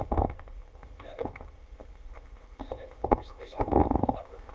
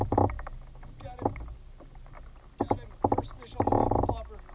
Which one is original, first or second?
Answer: second